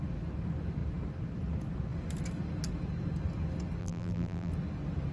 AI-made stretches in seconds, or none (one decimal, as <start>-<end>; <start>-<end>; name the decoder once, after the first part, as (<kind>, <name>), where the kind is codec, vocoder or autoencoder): 3.8-4.5 (vocoder, BigVGAN v2)